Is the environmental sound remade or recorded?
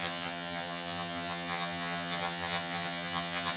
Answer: remade